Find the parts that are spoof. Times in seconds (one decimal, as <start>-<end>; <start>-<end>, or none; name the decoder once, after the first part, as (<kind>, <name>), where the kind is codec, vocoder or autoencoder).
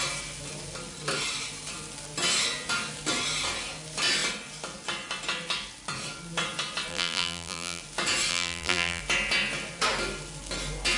6.9-7.8 (vocoder, BigVGAN v2); 8.3-9.0